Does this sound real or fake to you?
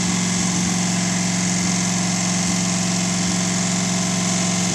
real